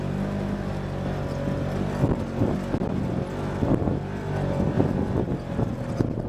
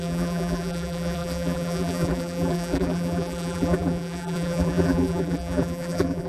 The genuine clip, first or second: first